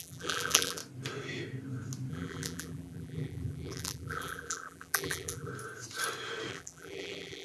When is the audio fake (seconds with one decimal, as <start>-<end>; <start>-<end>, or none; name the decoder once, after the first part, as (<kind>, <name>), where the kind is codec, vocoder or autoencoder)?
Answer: 0.0-0.8 (vocoder, BigVGAN v2); 2.1-5.5; 6.5-7.4